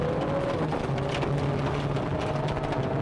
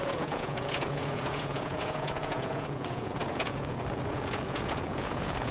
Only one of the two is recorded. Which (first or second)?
first